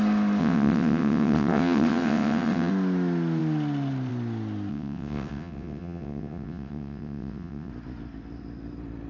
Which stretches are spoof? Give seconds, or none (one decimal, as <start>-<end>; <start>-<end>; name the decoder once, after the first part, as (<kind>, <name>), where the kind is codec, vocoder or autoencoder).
0.4-2.7 (vocoder, WaveNeXt); 4.7-7.7